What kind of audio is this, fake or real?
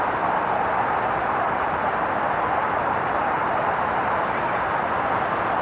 fake